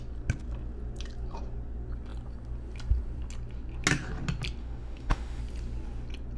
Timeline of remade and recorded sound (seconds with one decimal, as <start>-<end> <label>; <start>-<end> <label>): 0.0-4.6 recorded; 4.6-5.4 remade; 5.4-6.4 recorded

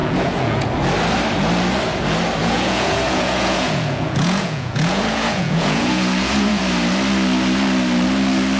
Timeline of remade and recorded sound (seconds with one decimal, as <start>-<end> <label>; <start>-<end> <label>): 0.0-0.7 remade; 0.7-2.4 recorded; 2.4-6.6 remade; 6.6-8.6 recorded